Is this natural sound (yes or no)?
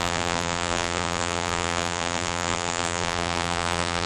no